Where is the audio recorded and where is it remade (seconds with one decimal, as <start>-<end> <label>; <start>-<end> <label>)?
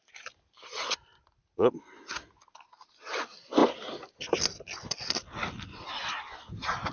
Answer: 0.0-6.9 recorded